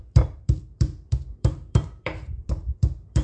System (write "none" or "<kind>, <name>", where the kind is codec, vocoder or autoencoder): vocoder, BigVGAN v2